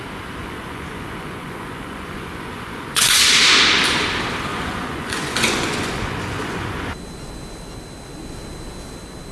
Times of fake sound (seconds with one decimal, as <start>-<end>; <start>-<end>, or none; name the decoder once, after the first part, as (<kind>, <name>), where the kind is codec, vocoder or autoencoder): 0.4-3.2 (vocoder, Vocos); 4.5-6.9